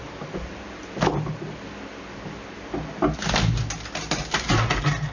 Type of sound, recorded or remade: recorded